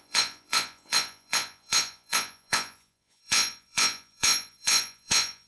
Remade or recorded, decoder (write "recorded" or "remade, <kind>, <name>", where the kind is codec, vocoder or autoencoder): remade, vocoder, Vocos